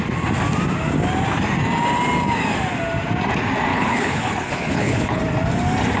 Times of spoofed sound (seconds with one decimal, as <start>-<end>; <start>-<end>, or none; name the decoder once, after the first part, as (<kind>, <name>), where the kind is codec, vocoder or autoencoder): 3.7-5.2 (codec, HILCodec)